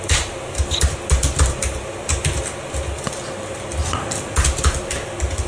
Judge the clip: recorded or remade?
recorded